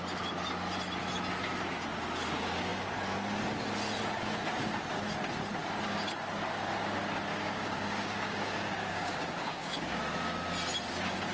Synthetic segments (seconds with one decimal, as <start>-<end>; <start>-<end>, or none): 7.3-10.0